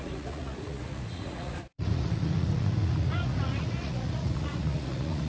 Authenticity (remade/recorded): remade